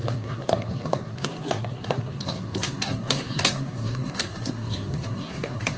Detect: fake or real fake